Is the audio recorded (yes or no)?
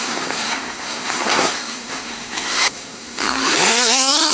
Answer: no